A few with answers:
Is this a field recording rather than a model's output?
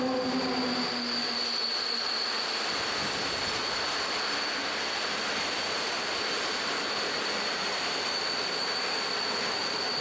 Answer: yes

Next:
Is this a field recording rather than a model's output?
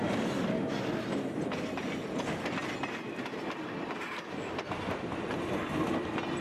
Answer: yes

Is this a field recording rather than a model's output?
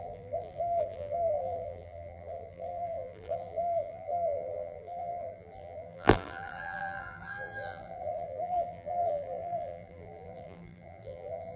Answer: no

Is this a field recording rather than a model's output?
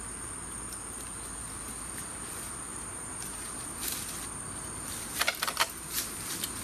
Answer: yes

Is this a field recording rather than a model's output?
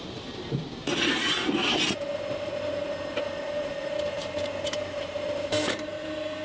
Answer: no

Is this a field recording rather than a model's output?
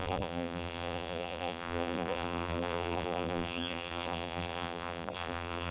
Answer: no